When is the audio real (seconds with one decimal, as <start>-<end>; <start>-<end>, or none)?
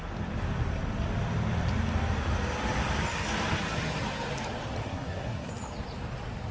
0.0-4.8; 5.5-6.5